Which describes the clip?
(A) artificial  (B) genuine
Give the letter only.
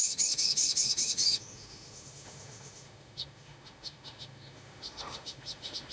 A